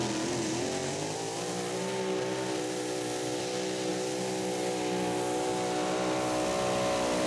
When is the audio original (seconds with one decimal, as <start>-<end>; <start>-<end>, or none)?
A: 0.0-7.3